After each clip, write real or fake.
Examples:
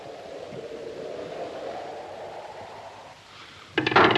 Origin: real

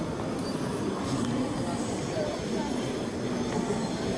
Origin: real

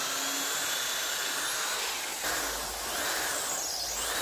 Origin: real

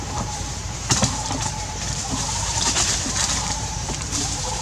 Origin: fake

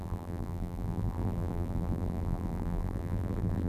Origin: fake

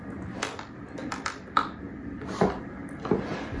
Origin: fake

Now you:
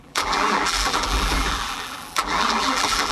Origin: fake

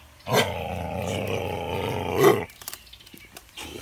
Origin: fake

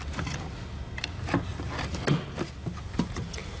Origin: real